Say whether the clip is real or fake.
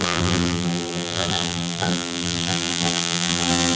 fake